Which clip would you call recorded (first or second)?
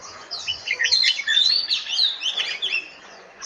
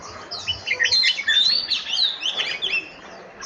second